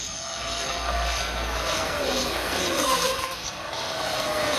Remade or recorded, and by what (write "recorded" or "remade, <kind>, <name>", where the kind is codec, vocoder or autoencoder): remade, codec, SNAC